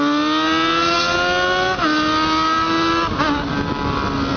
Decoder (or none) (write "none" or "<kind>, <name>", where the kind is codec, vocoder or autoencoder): none